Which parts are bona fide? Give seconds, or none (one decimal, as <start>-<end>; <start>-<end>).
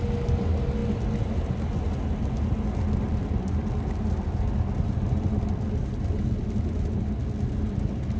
0.0-8.2